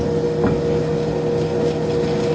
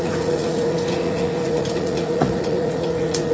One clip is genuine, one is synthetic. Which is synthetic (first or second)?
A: second